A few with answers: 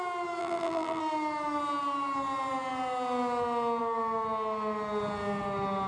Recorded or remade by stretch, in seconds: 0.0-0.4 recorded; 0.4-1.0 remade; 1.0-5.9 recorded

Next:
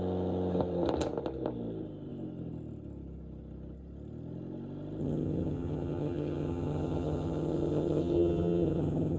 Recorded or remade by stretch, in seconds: 0.0-5.0 recorded; 5.0-9.2 remade

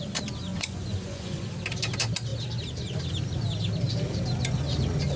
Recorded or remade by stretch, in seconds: 0.0-0.5 recorded; 0.5-1.5 remade; 1.5-5.2 recorded

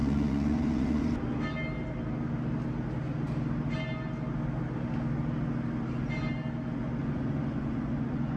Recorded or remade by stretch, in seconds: 0.0-1.0 remade; 1.0-7.0 recorded; 7.0-8.4 remade